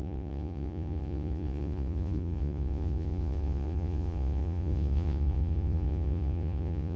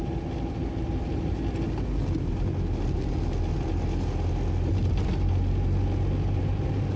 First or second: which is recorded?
second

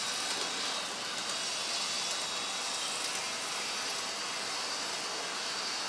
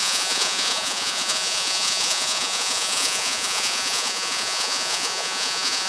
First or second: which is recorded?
first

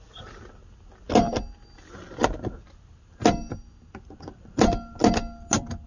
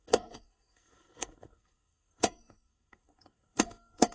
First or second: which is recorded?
first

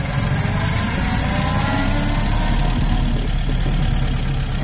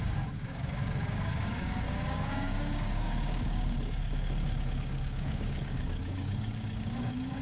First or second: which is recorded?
first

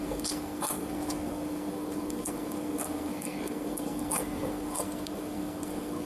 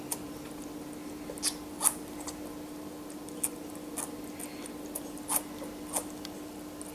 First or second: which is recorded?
second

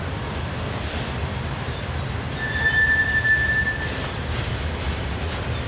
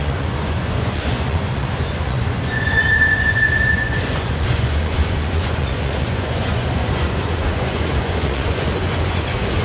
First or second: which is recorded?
first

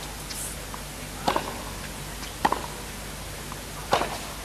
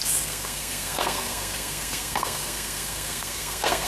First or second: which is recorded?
first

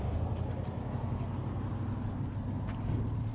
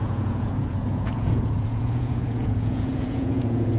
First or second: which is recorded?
first